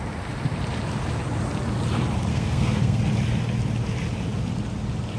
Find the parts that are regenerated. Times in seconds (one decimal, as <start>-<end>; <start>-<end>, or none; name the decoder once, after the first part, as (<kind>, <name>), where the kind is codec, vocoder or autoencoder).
2.3-3.0 (codec, SNAC)